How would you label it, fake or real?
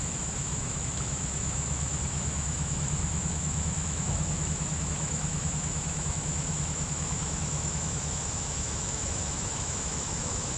fake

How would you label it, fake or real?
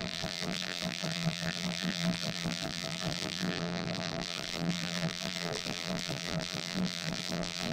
fake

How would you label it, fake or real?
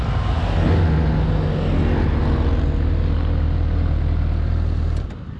real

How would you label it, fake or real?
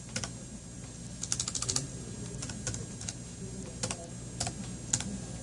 real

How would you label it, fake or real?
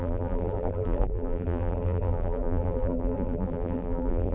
fake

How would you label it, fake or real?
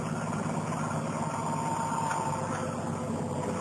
real